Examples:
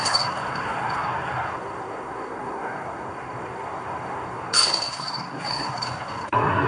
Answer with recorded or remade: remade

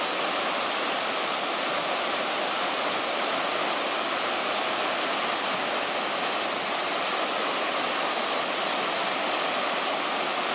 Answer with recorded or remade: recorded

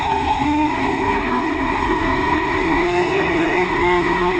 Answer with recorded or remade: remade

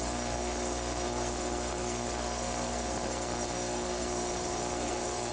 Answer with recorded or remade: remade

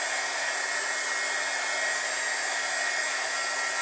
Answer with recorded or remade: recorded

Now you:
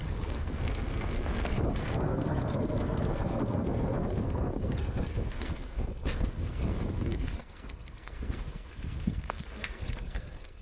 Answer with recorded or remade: remade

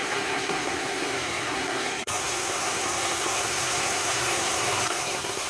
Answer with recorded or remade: remade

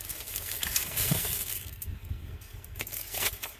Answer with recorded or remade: remade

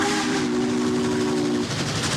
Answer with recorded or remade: recorded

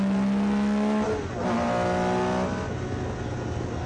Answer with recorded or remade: recorded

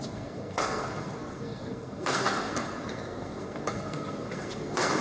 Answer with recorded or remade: remade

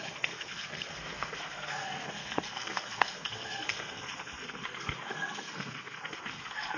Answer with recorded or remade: remade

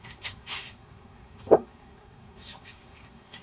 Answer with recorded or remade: remade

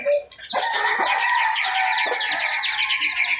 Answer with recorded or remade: recorded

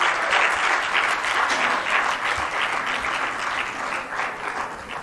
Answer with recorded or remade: recorded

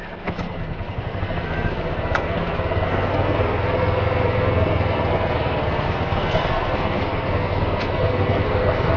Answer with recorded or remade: remade